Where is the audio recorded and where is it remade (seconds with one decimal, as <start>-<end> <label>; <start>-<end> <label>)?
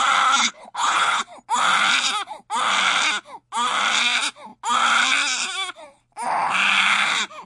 0.0-0.4 recorded; 0.4-1.2 remade; 1.2-7.5 recorded